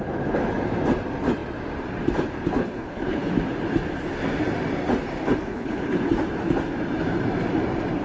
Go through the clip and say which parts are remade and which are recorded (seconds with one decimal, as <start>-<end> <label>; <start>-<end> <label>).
0.0-2.6 recorded; 2.6-3.3 remade; 3.3-5.5 recorded; 5.5-6.1 remade; 6.1-8.0 recorded

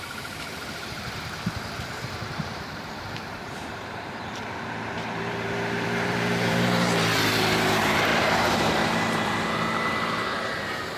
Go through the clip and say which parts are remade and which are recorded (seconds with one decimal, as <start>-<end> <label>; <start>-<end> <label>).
0.0-11.0 remade

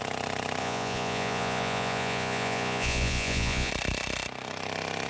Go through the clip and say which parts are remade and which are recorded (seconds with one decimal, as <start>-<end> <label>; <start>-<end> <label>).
0.0-0.6 recorded; 0.6-3.7 remade; 3.7-5.1 recorded

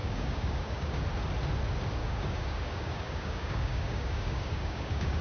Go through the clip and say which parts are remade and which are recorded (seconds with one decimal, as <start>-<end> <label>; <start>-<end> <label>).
0.0-1.0 remade; 1.0-2.0 recorded; 2.0-5.2 remade

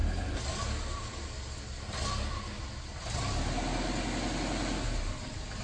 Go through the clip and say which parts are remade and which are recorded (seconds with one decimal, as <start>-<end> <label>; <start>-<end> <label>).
0.0-5.6 recorded